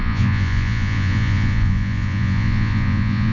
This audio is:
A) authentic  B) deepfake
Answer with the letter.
B